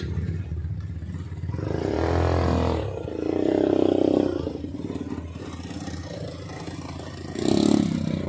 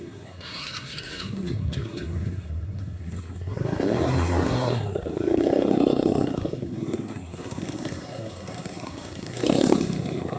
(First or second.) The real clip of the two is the first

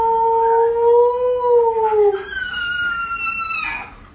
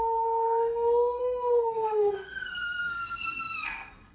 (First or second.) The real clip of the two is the first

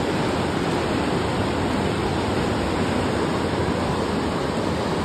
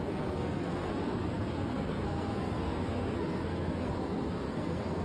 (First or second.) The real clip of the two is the first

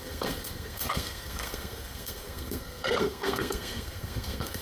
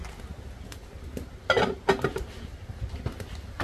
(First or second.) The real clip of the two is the second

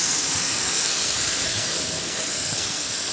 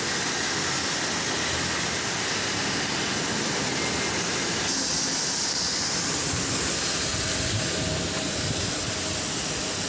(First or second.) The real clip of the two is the second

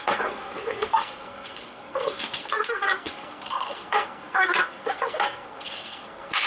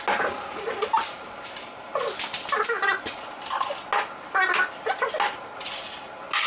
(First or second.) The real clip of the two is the second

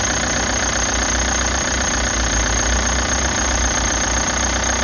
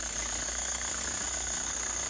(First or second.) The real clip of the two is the first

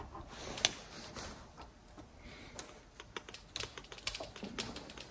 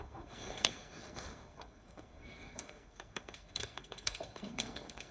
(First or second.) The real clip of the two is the first